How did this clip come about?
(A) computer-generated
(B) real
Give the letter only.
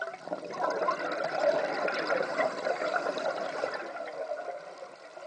B